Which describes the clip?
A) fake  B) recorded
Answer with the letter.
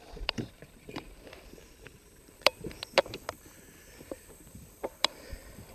A